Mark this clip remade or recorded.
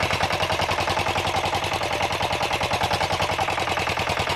remade